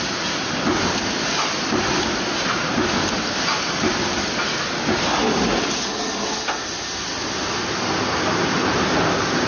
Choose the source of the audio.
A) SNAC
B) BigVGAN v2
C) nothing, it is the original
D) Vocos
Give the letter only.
C